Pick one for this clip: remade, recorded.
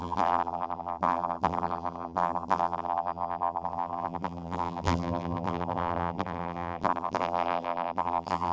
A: remade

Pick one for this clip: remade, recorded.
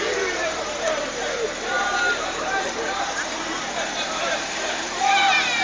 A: remade